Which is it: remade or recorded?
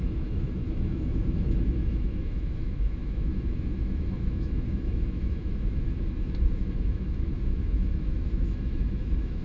remade